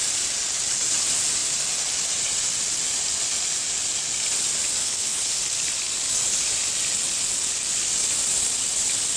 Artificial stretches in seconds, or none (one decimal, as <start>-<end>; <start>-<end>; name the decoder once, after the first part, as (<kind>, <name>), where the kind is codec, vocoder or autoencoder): 4.8-5.4 (codec, HILCodec)